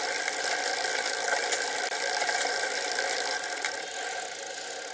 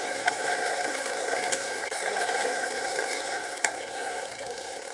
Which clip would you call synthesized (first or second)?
second